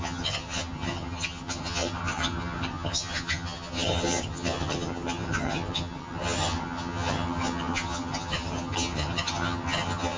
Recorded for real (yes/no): no